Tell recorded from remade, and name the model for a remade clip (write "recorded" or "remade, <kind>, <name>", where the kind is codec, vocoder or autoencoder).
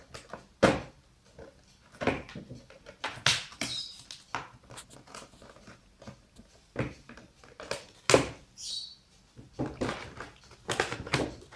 recorded